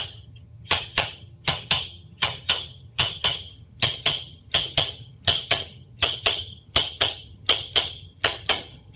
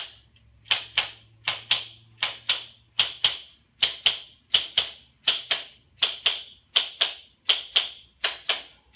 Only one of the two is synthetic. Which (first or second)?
first